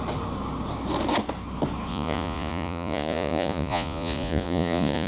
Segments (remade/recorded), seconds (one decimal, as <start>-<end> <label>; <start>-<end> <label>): 0.0-1.9 recorded; 1.9-5.1 remade